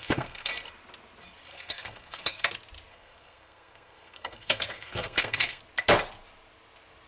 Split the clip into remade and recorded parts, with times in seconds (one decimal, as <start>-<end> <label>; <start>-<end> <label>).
0.0-0.5 remade; 0.5-1.5 recorded; 1.5-2.5 remade; 2.5-2.9 recorded; 2.9-5.6 remade; 5.6-7.1 recorded